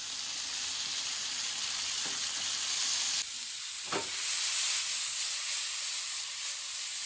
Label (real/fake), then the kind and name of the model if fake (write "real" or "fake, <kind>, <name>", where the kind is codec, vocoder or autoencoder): real